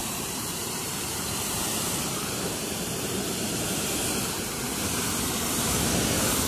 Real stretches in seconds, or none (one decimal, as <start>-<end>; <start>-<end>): 3.9-6.5